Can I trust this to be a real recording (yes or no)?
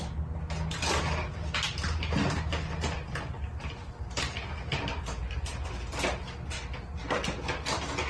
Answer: yes